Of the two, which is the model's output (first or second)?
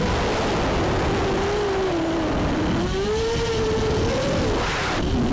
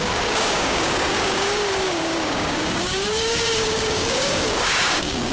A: second